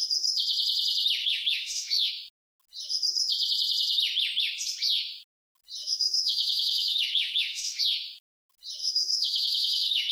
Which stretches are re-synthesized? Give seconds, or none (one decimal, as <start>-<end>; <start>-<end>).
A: 1.2-2.1; 5.8-7.8; 8.8-10.1